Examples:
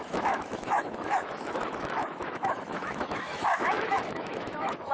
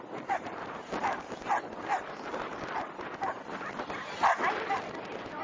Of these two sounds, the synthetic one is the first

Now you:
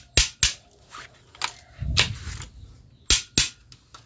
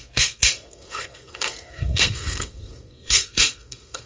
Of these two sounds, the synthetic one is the second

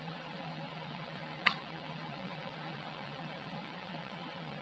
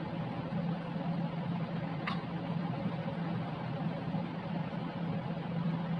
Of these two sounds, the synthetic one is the first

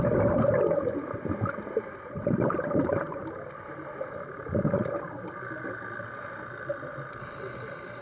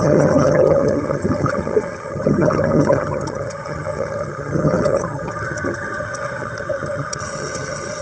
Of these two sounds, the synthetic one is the second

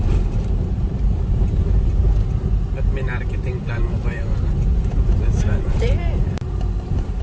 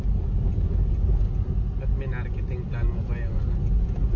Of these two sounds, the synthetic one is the first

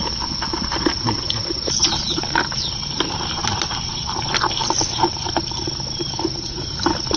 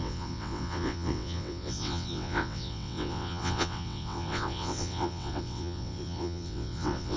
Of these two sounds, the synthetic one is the second